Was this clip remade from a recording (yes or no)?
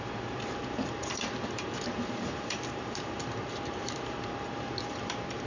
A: yes